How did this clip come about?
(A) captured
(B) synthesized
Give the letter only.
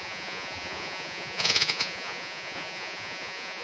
B